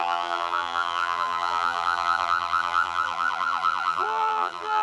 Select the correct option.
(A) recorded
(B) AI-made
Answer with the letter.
B